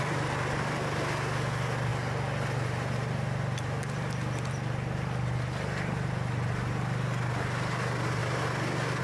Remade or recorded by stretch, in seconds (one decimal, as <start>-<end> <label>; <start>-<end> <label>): 0.0-8.2 recorded; 8.2-9.0 remade